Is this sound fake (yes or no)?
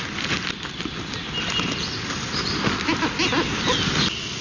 no